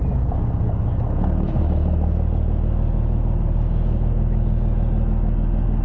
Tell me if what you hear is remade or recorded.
recorded